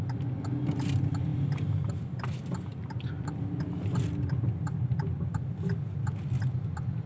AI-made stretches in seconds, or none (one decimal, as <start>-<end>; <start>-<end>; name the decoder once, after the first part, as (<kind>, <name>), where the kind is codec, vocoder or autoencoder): none